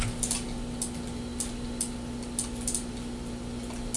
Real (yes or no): yes